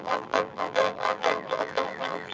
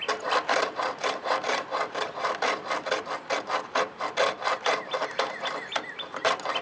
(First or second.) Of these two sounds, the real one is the second